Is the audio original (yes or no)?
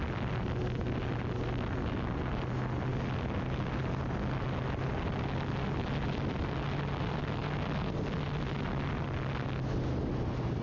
yes